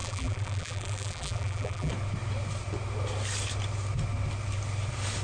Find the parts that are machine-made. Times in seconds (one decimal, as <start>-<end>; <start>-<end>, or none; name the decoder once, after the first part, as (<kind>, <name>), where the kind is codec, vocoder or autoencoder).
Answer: 0.0-1.9 (vocoder, BigVGAN v2)